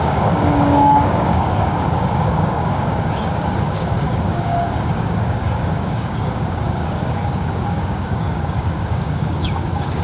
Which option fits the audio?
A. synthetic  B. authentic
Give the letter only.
A